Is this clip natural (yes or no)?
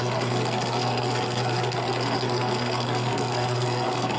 no